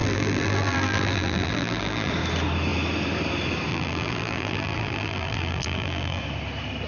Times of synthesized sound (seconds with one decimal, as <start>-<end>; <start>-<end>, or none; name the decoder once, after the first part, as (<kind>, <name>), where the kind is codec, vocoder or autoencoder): 0.0-2.1 (vocoder, BigVGAN v2); 3.7-6.2